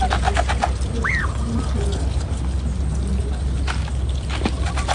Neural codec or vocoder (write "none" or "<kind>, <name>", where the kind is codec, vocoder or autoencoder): none